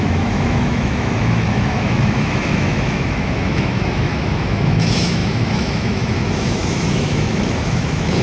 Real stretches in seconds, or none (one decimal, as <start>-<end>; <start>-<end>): none

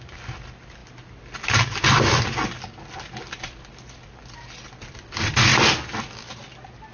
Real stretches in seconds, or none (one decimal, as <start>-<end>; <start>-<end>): 0.0-6.9

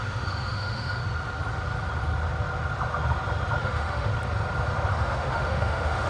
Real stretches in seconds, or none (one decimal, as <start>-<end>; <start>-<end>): 1.0-3.6; 4.1-4.9

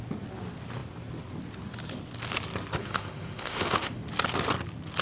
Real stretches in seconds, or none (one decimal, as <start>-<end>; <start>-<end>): 0.0-2.8; 4.0-5.0

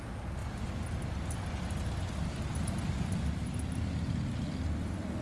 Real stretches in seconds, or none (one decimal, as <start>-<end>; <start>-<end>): 0.0-5.2

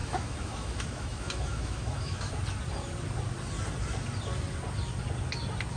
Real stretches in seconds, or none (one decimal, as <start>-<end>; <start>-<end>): 2.3-5.8

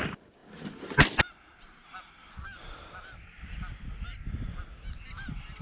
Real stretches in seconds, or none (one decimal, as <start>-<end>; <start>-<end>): 0.0-5.6

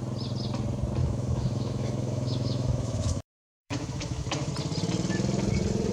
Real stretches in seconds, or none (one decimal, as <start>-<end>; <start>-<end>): 0.0-1.0; 4.5-5.9